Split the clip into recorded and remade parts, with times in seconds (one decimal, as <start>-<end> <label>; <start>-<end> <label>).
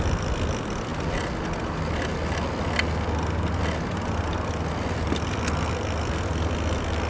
0.0-7.1 recorded